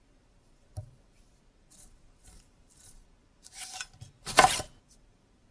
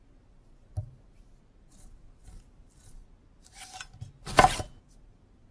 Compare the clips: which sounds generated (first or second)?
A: first